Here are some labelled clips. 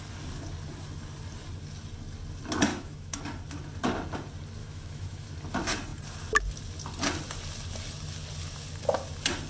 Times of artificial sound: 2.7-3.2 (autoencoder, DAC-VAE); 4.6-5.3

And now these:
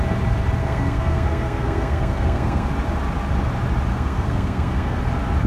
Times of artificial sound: 0.6-2.7 (codec, SNAC); 3.9-5.0